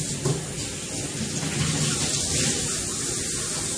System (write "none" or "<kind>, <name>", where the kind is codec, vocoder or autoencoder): none